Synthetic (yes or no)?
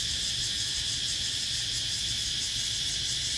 no